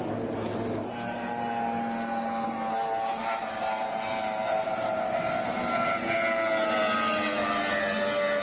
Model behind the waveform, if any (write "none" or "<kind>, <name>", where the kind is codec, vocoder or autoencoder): none